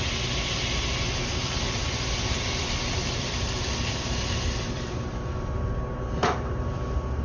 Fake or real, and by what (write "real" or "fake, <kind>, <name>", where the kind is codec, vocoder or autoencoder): real